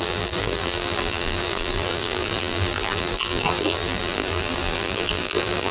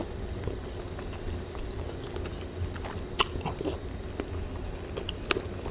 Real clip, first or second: second